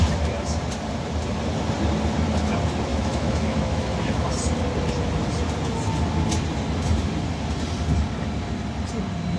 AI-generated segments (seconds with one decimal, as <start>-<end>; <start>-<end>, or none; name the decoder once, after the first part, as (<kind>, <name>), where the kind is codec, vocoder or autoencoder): 2.9-4.3 (autoencoder, DAC-VAE)